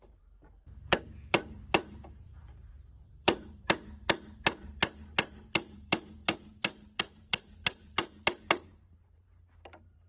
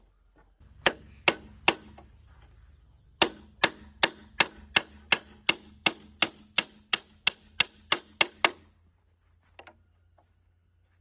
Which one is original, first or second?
second